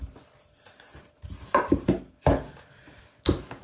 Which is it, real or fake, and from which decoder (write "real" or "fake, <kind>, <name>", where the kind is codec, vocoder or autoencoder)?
real